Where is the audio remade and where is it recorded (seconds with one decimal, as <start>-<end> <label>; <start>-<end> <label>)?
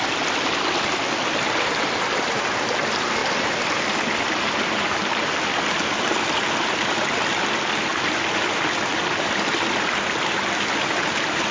0.0-11.5 recorded